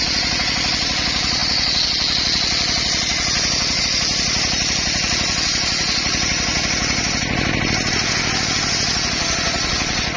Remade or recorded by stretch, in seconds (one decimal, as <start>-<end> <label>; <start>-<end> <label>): 0.0-10.2 recorded